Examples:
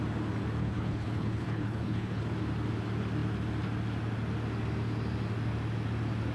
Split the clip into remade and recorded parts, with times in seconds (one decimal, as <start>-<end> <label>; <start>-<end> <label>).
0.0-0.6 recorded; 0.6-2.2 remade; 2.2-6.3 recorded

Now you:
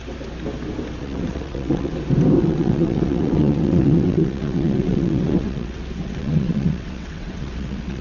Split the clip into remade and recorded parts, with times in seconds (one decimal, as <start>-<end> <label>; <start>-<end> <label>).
0.0-1.0 recorded; 1.0-1.9 remade; 1.9-2.4 recorded; 2.4-8.0 remade

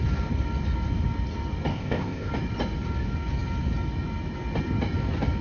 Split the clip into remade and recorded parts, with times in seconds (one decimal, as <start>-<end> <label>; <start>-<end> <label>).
0.0-1.7 recorded; 1.7-2.3 remade; 2.3-5.4 recorded

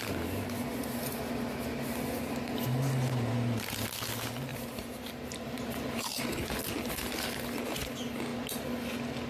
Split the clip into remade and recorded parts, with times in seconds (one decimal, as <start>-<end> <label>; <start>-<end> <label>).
0.0-4.5 recorded; 4.5-6.5 remade; 6.5-9.3 recorded

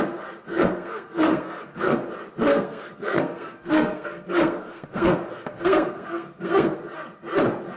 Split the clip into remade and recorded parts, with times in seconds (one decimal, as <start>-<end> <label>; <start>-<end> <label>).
0.0-0.5 recorded; 0.5-2.0 remade; 2.0-2.5 recorded; 2.5-6.8 remade; 6.8-7.8 recorded

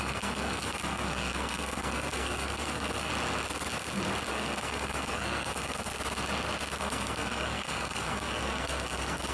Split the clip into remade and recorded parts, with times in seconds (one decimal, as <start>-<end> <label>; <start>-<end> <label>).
0.0-3.1 remade; 3.1-4.3 recorded; 4.3-5.9 remade; 5.9-6.8 recorded; 6.8-9.3 remade

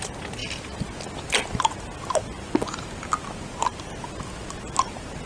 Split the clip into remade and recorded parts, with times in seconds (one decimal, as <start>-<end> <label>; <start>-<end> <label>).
0.0-5.3 recorded

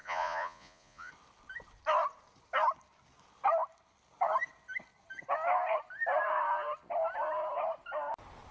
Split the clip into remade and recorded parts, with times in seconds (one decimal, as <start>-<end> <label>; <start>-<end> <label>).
0.0-1.1 remade; 1.1-8.5 recorded